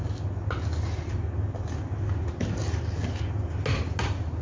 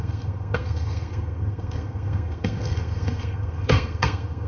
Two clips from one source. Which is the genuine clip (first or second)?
first